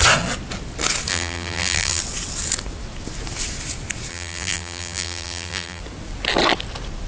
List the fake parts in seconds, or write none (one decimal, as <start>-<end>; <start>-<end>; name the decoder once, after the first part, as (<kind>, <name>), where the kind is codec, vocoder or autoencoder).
1.1-2.0 (vocoder, BigVGAN v2); 4.1-5.8